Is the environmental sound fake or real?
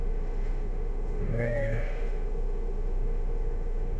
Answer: fake